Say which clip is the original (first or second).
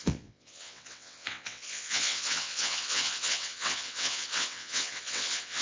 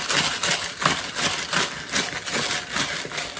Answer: second